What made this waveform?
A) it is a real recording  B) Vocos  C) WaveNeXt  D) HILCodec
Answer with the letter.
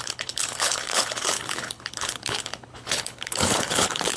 D